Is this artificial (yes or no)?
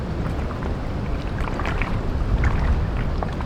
no